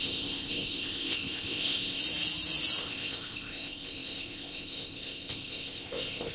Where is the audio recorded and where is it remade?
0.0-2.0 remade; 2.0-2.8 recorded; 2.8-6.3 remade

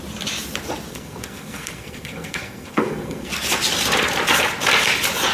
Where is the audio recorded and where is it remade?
0.0-0.9 recorded; 0.9-3.3 remade; 3.3-5.3 recorded

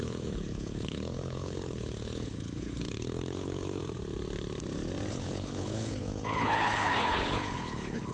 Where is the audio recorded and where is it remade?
0.0-3.8 remade; 3.8-5.1 recorded; 5.1-8.1 remade

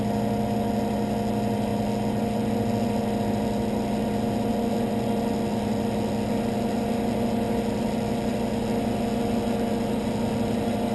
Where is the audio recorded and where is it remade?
0.0-10.9 recorded

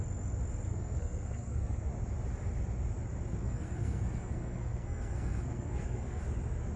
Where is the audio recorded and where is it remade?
0.0-0.7 recorded; 0.7-1.9 remade; 1.9-3.4 recorded; 3.4-6.2 remade; 6.2-6.8 recorded

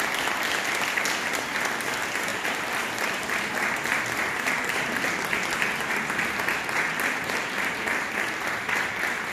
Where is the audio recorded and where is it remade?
0.0-9.3 recorded

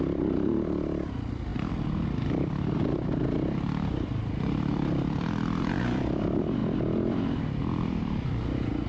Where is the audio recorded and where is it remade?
0.0-1.5 recorded; 1.5-5.8 remade; 5.8-6.6 recorded; 6.6-8.4 remade; 8.4-8.9 recorded

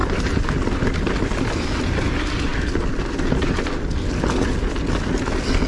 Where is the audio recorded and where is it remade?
0.0-5.7 recorded